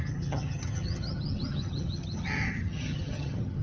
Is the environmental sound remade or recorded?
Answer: remade